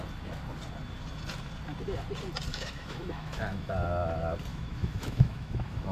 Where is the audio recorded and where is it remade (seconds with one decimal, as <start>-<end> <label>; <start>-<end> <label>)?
0.0-2.5 recorded; 2.5-3.7 remade; 3.7-4.5 recorded; 4.5-5.9 remade